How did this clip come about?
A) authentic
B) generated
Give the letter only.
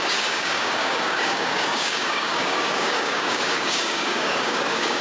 B